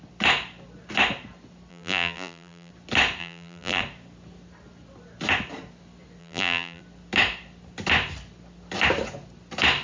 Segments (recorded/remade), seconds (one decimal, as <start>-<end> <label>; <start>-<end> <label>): 0.0-1.7 recorded; 1.7-2.7 remade; 2.7-3.2 recorded; 3.2-3.8 remade; 3.8-6.2 recorded; 6.2-6.8 remade; 6.8-9.8 recorded